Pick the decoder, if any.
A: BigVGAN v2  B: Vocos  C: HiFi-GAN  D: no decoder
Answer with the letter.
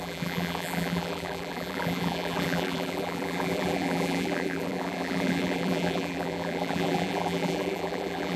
A